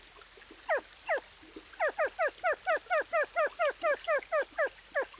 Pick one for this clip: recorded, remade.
recorded